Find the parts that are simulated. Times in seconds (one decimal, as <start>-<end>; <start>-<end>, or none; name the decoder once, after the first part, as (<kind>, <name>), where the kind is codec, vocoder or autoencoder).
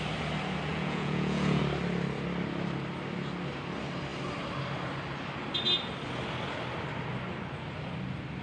0.7-1.6 (vocoder, Vocos)